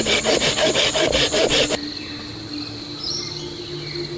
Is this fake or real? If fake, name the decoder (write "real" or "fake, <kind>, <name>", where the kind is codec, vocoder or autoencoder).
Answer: real